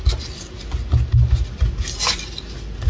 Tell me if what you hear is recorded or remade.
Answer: recorded